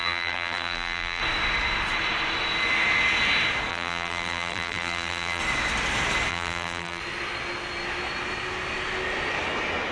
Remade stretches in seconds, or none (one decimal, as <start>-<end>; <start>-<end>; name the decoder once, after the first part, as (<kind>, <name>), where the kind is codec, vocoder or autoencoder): 0.0-1.2 (vocoder, BigVGAN v2); 3.7-5.4; 6.3-7.0